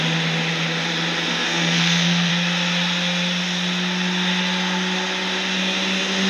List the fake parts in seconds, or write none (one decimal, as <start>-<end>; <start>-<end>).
1.3-2.3